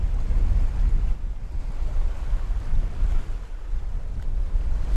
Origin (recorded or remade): recorded